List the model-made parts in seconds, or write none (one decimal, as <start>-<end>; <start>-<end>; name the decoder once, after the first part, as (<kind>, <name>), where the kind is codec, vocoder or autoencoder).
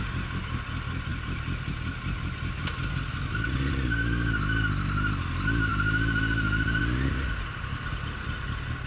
1.1-1.7 (vocoder, BigVGAN v2); 5.7-6.8